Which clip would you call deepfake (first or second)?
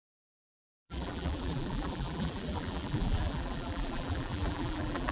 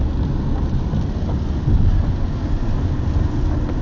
first